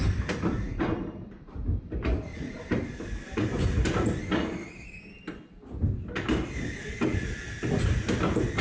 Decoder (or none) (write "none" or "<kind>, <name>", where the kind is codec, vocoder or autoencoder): vocoder, BigVGAN v2